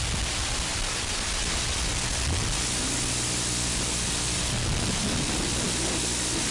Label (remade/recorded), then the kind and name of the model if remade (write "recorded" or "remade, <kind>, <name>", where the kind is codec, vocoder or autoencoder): recorded